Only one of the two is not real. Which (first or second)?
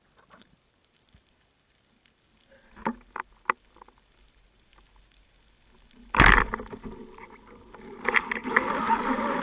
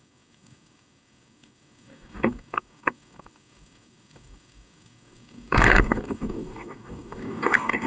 second